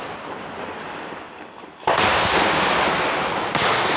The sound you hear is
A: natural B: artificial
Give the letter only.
A